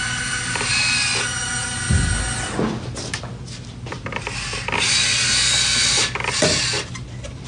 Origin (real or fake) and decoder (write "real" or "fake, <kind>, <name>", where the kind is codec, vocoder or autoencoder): real